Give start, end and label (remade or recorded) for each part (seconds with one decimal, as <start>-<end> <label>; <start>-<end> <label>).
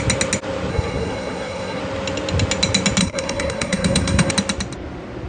0.0-0.7 recorded; 0.7-1.8 remade; 1.8-3.0 recorded; 3.0-4.3 remade; 4.3-5.3 recorded